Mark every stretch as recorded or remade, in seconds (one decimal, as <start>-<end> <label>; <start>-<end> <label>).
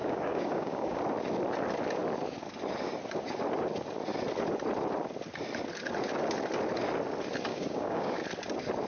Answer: 0.0-1.0 remade; 1.0-7.5 recorded; 7.5-8.2 remade; 8.2-8.9 recorded